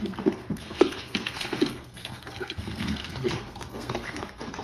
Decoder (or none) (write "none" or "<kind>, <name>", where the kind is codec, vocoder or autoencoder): codec, SNAC